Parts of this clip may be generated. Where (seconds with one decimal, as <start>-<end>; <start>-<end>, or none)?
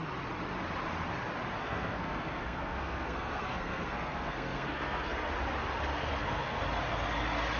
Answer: 1.6-5.3; 6.1-6.6